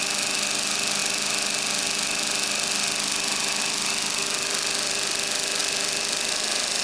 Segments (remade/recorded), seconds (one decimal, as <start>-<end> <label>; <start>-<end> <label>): 0.0-6.8 recorded